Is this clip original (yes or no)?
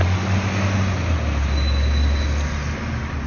yes